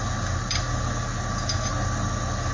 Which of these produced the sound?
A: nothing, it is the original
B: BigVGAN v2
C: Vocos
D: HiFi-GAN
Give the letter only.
A